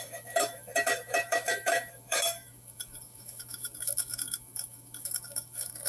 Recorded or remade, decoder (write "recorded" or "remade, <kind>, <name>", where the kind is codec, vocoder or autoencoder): remade, autoencoder, DAC-VAE